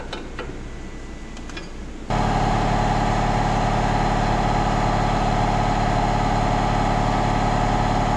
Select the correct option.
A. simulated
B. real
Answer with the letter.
B